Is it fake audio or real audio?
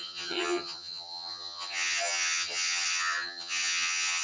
fake